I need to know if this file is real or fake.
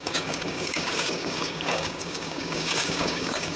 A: fake